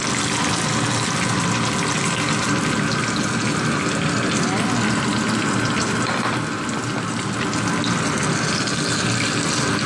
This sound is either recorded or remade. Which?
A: recorded